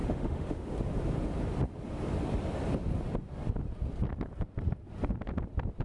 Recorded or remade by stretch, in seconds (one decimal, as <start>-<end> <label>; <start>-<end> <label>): 0.0-0.7 remade; 0.7-5.8 recorded